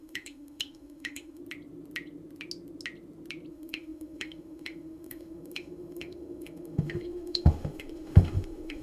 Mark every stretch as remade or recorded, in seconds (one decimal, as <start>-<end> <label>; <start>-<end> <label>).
0.0-1.4 remade; 1.4-3.5 recorded; 3.5-8.8 remade